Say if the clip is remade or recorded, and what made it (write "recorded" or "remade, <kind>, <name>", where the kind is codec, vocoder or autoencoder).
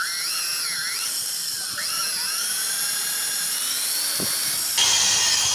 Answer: recorded